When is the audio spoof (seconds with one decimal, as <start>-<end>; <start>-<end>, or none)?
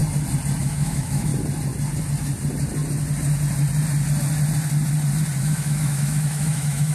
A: 0.6-1.3; 5.4-6.9